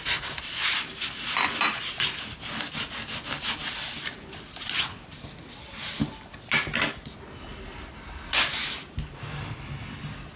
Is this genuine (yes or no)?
yes